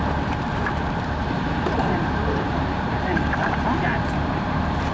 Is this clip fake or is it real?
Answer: fake